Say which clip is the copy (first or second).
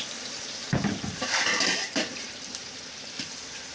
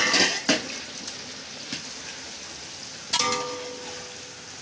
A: first